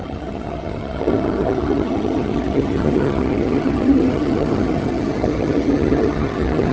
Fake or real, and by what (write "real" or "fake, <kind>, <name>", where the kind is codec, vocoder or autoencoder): fake, vocoder, HiFi-GAN